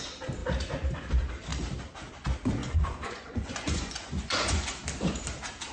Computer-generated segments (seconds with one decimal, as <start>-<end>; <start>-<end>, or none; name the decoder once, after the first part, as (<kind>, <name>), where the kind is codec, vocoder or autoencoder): 2.6-4.8 (vocoder, Vocos)